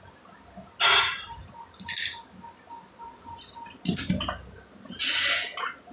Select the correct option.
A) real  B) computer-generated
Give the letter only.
A